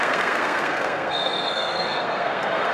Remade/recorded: remade